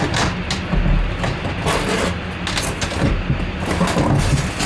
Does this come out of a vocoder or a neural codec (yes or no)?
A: no